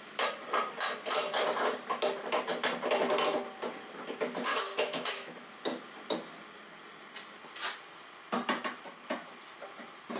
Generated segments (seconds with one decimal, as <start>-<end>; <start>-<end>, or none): 4.5-5.5

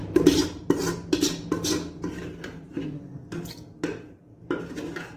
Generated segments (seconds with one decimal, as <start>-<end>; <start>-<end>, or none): none